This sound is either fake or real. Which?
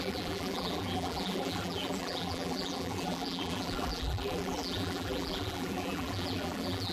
fake